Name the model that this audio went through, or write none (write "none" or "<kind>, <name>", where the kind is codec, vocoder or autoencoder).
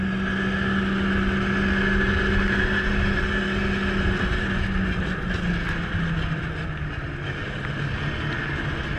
none